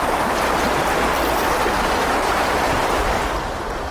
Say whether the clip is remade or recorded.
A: remade